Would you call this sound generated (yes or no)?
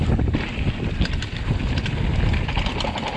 no